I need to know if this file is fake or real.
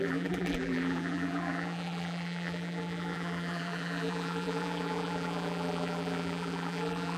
fake